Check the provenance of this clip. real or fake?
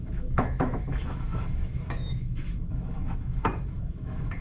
fake